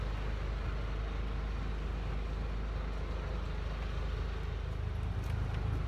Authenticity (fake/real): real